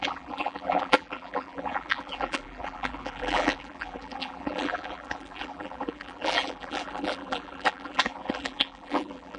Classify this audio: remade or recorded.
remade